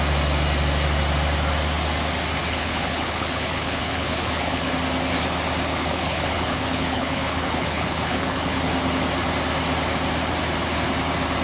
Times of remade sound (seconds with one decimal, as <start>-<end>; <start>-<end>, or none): 2.4-4.7; 5.7-8.6